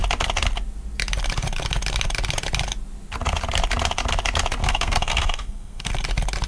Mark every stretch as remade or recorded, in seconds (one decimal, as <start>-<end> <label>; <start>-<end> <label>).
0.0-4.6 recorded; 4.6-5.9 remade; 5.9-6.5 recorded